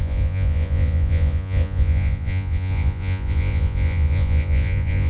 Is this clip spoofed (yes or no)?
yes